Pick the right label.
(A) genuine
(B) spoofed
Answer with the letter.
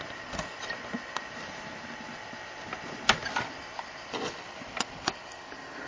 A